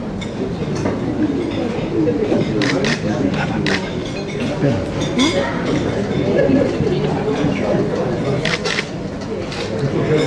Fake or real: real